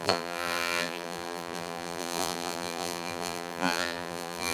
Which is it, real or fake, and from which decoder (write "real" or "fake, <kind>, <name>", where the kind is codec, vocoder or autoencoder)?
fake, vocoder, BigVGAN v2